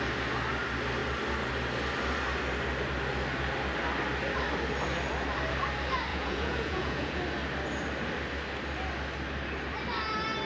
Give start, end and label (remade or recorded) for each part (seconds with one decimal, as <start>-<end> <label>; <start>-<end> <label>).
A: 0.0-6.1 recorded; 6.1-7.2 remade; 7.2-10.5 recorded